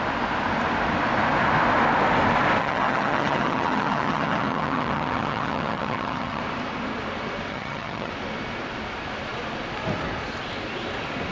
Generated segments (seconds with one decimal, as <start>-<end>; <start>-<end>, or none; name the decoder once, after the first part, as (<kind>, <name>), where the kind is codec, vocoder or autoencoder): 2.6-6.4 (vocoder, HiFi-GAN); 7.5-8.1